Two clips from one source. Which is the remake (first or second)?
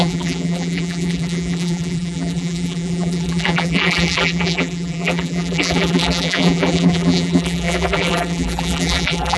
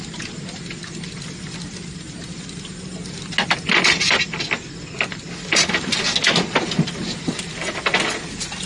first